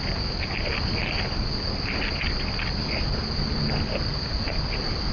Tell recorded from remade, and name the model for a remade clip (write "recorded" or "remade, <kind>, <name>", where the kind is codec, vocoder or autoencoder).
recorded